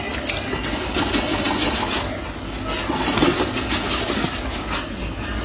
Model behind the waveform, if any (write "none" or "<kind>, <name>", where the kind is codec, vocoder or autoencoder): none